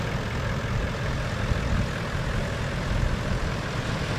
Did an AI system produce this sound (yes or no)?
no